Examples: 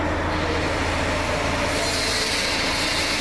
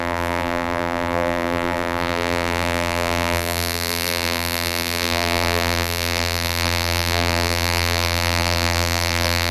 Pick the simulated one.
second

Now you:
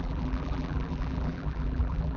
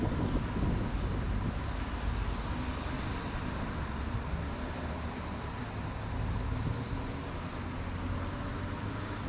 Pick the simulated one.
first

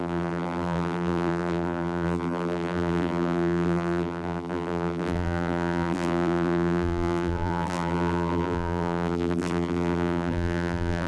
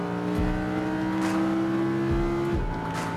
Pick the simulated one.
first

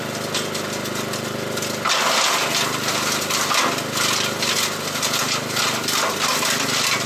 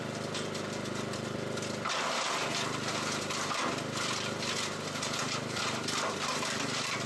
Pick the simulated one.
second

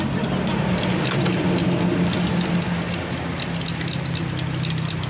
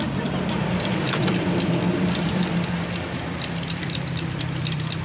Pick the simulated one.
second